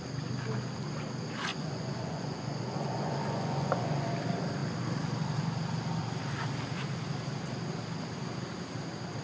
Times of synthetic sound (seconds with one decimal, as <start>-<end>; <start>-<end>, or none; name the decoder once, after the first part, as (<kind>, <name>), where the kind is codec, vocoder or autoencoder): 1.5-4.1 (vocoder, Vocos)